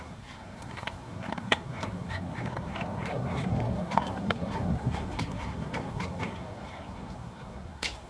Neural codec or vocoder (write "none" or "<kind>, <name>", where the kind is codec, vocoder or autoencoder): codec, SNAC